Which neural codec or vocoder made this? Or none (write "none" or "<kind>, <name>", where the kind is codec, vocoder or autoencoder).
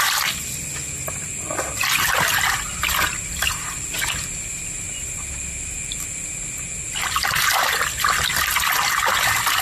none